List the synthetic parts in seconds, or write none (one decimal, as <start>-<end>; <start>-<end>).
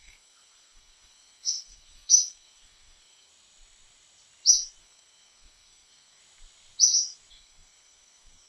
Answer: 0.0-3.3; 4.8-6.2; 7.3-8.5